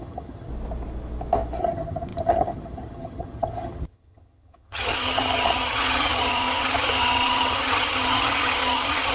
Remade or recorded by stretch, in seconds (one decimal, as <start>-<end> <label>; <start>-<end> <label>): 0.0-0.5 remade; 0.5-1.6 recorded; 1.6-9.1 remade